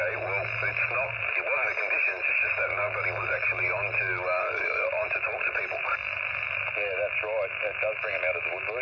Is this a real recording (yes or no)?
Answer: yes